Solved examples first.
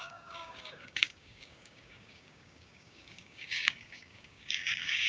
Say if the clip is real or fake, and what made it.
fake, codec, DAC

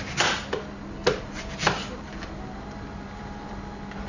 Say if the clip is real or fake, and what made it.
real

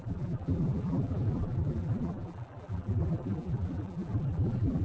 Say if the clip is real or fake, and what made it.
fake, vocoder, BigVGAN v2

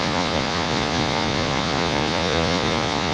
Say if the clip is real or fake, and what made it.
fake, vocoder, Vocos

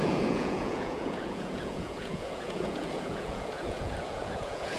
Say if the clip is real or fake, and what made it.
fake, vocoder, Vocos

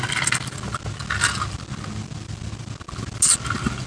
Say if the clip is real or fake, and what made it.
real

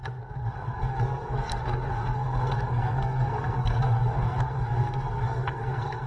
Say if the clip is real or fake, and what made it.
fake, codec, SNAC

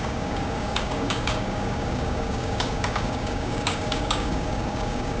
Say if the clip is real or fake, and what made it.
fake, codec, DAC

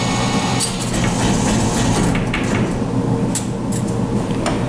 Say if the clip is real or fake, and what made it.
real